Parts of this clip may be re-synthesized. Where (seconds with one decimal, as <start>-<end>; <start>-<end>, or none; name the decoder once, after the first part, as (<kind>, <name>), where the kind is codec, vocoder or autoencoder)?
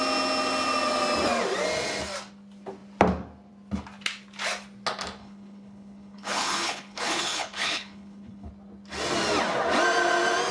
5.2-8.5 (codec, HILCodec)